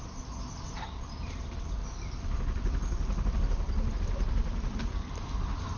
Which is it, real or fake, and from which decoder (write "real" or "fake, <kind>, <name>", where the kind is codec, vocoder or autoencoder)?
fake, vocoder, BigVGAN v2